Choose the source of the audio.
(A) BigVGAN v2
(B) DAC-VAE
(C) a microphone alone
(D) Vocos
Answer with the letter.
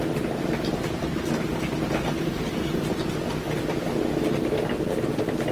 C